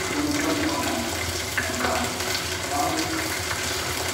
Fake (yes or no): no